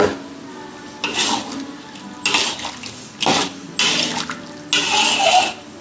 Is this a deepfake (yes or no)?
no